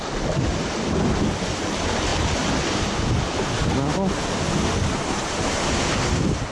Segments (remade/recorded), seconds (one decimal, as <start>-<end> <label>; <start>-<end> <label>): 0.0-6.5 recorded